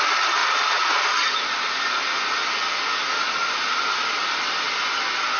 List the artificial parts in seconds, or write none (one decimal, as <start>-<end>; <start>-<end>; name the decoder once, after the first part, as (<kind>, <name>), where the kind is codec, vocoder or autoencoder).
none

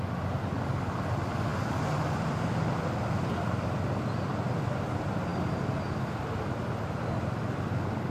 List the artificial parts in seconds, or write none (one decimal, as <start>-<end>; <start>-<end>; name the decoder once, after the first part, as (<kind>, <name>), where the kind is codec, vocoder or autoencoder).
none

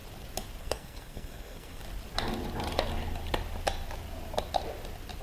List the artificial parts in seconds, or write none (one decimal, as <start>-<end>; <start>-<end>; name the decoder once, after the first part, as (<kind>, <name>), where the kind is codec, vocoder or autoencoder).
0.6-1.8 (codec, SNAC)

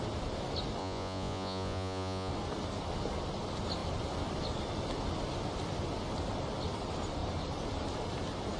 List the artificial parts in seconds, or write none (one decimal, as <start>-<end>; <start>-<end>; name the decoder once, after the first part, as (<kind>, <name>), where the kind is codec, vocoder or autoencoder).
0.8-2.3 (vocoder, Vocos)

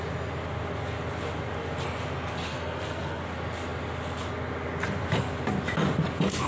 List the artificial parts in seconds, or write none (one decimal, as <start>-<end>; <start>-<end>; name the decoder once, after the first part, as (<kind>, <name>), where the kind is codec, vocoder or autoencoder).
2.5-3.2 (codec, SNAC)

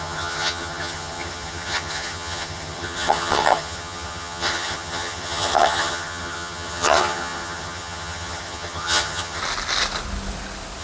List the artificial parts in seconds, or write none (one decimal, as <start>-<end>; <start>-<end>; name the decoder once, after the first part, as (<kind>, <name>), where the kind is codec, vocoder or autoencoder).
0.0-9.4 (vocoder, HiFi-GAN)

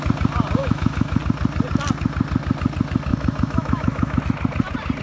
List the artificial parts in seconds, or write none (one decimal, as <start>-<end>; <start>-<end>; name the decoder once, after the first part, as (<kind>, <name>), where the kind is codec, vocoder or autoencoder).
0.6-1.2 (autoencoder, DAC-VAE); 3.1-4.2

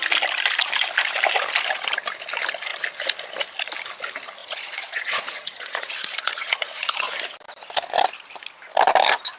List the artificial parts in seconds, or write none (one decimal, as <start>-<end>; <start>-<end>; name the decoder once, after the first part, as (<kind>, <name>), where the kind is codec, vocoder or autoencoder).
4.4-7.0 (vocoder, Vocos)